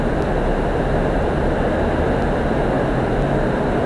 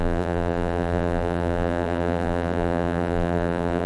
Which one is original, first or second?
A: first